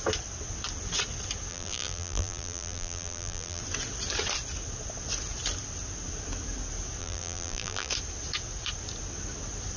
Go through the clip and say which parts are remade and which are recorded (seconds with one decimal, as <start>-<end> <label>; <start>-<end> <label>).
0.0-1.5 recorded; 1.5-3.6 remade; 3.6-7.0 recorded; 7.0-7.9 remade; 7.9-9.8 recorded

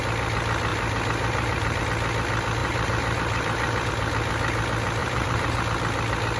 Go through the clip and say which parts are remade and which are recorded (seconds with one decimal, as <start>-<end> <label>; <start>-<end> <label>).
0.0-0.7 recorded; 0.7-1.8 remade; 1.8-2.6 recorded; 2.6-3.9 remade; 3.9-5.0 recorded; 5.0-5.6 remade; 5.6-6.4 recorded